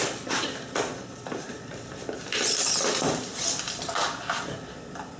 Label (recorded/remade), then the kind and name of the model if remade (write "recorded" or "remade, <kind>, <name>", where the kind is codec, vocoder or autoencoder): recorded